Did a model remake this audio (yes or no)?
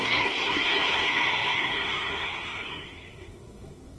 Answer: yes